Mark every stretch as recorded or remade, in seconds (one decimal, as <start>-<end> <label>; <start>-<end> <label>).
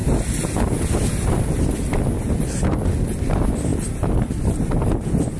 0.0-5.4 recorded